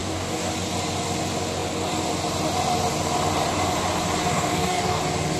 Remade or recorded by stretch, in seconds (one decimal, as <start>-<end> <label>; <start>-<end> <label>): 0.0-0.5 remade; 0.5-4.3 recorded; 4.3-5.0 remade; 5.0-5.4 recorded